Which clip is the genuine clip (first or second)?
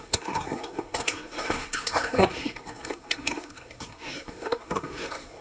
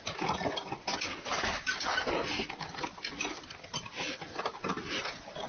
second